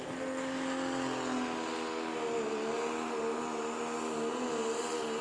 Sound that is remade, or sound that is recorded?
recorded